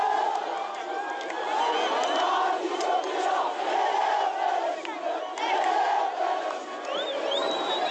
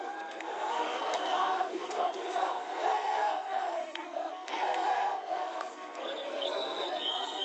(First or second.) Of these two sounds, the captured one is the first